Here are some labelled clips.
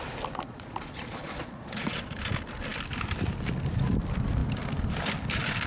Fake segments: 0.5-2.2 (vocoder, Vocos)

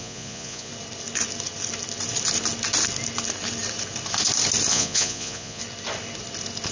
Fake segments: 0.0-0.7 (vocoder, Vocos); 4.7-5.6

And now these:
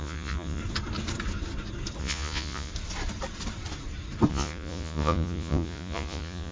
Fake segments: 0.0-0.6 (vocoder, Vocos); 2.0-2.7; 4.3-6.5